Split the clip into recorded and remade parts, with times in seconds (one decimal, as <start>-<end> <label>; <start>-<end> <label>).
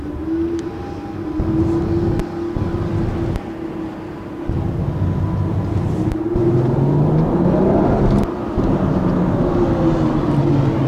0.0-10.9 recorded